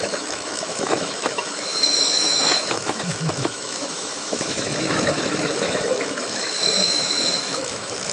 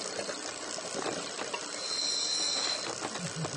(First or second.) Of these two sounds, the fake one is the first